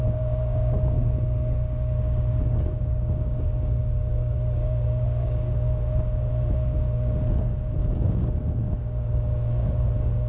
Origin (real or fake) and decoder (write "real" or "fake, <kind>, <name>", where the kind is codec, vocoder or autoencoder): fake, codec, DAC